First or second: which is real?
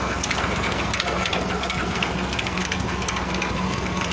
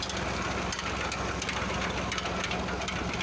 second